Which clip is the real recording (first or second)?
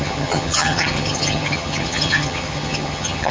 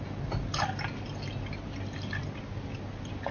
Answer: second